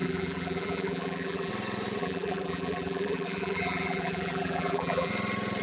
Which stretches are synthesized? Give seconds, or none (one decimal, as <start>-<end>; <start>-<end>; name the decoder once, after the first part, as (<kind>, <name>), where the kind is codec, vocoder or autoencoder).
0.0-1.5 (vocoder, BigVGAN v2); 2.0-5.1